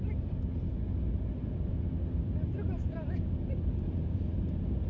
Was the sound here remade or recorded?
recorded